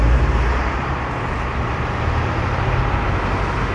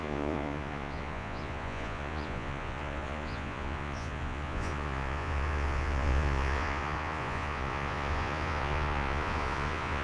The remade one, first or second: second